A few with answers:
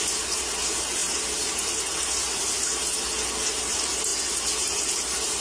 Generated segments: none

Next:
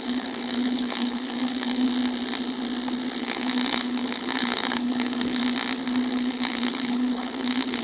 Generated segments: 0.0-1.9 (codec, HILCodec); 3.2-5.4; 6.1-7.8